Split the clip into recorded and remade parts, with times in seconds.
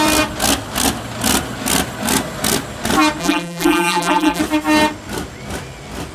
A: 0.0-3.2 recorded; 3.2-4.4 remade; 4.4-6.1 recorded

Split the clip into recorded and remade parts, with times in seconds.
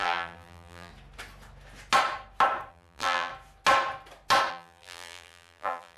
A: 0.0-0.9 remade; 0.9-2.7 recorded; 2.7-3.3 remade; 3.3-4.5 recorded; 4.5-6.0 remade